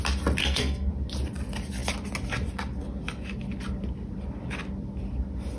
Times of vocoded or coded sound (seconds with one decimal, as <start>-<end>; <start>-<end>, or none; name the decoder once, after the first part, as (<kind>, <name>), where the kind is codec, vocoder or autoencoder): 0.4-0.9 (codec, SNAC)